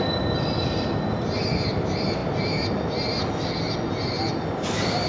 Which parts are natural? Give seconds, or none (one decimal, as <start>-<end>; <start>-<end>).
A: 0.0-5.1